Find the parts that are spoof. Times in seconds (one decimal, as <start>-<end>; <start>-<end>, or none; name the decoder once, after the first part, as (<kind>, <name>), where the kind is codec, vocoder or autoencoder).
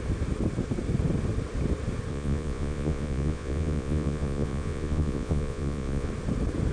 2.1-6.1 (vocoder, Vocos)